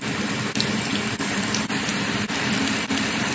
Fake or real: real